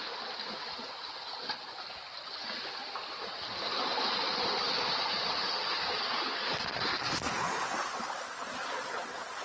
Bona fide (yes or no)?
yes